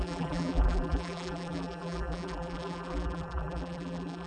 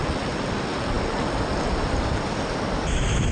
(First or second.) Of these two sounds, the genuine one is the second